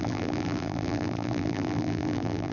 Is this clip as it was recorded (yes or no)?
no